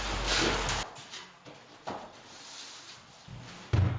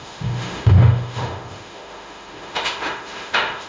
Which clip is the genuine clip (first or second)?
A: first